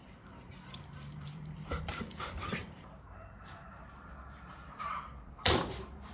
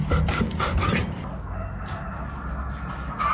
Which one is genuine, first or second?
second